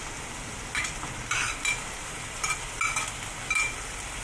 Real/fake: real